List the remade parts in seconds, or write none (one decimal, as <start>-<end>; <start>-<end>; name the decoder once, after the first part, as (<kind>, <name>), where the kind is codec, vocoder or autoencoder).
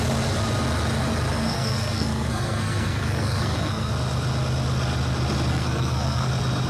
1.4-3.9 (codec, SNAC); 5.5-6.3